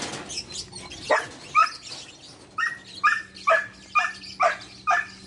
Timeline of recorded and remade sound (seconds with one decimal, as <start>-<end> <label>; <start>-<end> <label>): 0.0-5.3 recorded